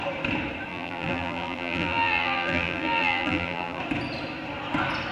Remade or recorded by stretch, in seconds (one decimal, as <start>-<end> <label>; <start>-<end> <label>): 0.0-0.7 recorded; 0.7-3.8 remade; 3.8-5.1 recorded